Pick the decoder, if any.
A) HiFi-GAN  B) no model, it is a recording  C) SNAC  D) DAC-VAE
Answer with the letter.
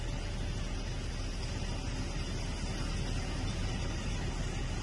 B